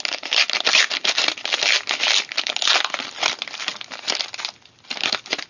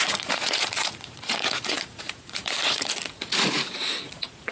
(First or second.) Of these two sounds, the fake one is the second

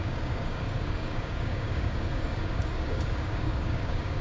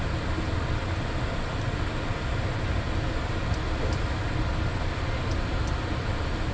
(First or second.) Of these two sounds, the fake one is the first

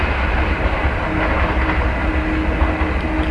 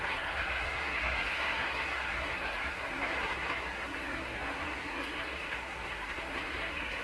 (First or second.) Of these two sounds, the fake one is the second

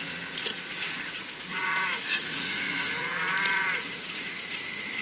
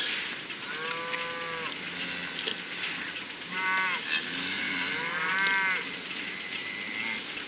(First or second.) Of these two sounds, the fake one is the first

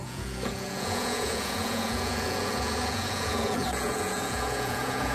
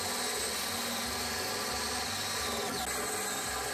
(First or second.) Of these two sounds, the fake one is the first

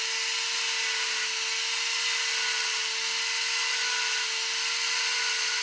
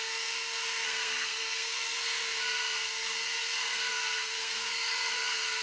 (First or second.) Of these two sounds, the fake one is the second